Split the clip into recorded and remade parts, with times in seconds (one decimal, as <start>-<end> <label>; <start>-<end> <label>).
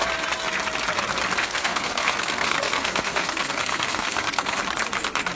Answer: 0.0-1.4 recorded; 1.4-4.6 remade; 4.6-5.4 recorded